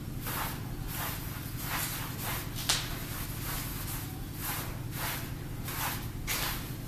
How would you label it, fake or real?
real